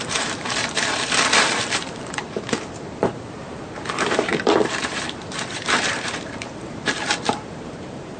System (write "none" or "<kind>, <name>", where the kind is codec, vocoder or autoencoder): vocoder, BigVGAN v2